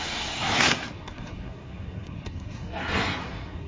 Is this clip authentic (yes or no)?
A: no